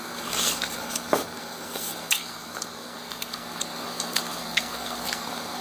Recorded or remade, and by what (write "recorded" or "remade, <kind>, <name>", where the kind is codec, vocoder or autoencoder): remade, codec, SNAC